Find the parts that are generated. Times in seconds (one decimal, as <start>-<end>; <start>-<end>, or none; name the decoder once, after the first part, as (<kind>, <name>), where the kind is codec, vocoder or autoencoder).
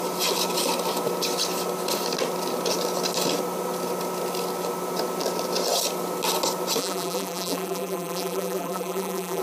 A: 6.8-9.4 (vocoder, BigVGAN v2)